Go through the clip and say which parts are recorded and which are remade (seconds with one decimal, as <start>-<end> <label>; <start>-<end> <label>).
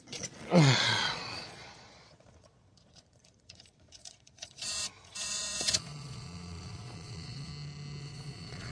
0.0-7.5 remade; 7.5-8.0 recorded; 8.0-8.7 remade